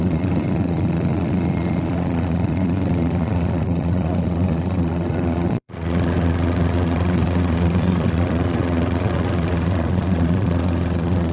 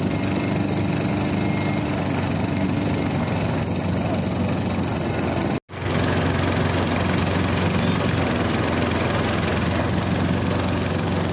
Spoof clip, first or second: first